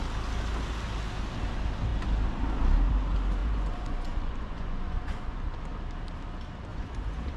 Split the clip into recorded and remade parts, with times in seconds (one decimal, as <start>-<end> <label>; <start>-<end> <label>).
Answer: 0.0-3.4 recorded; 3.4-5.6 remade; 5.6-6.7 recorded; 6.7-7.4 remade